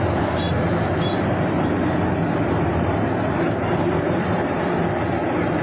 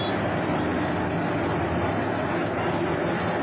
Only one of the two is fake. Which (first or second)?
first